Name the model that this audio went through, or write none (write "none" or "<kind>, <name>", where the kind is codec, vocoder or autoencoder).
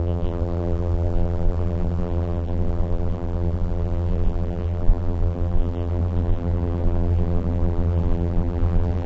vocoder, BigVGAN v2